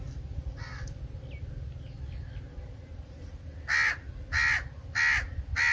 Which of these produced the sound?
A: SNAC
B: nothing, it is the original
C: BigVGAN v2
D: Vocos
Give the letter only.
B